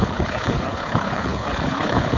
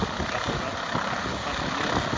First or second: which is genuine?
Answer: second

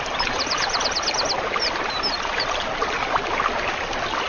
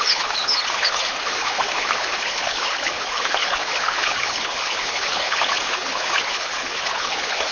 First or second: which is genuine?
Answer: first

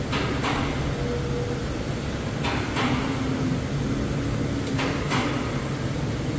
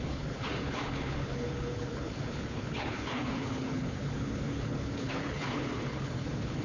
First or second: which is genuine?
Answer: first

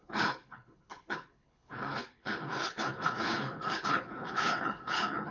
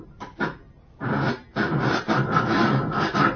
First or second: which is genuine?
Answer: second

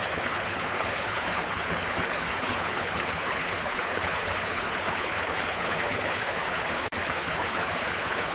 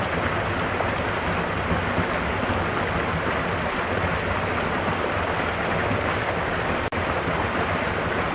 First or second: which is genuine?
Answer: second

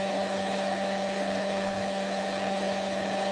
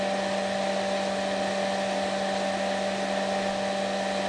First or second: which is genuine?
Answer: second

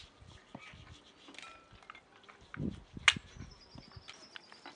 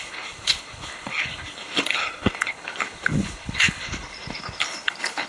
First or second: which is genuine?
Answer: first